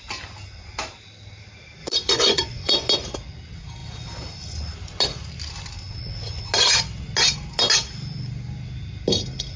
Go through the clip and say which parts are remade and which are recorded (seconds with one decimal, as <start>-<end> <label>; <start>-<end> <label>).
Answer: 0.0-1.8 recorded; 1.8-2.9 remade; 2.9-9.6 recorded